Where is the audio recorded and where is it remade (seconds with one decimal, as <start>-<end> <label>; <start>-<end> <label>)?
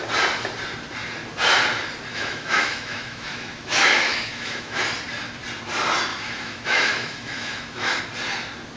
0.0-2.1 recorded; 2.1-4.8 remade; 4.8-6.1 recorded; 6.1-8.0 remade; 8.0-8.8 recorded